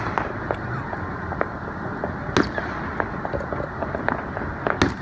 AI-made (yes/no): no